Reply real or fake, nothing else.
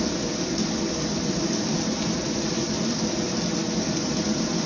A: real